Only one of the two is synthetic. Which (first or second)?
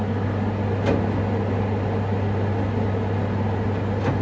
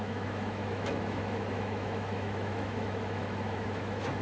second